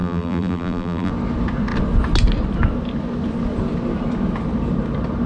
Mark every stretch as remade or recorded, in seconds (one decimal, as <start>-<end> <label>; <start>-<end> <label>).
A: 0.0-1.1 remade; 1.1-5.3 recorded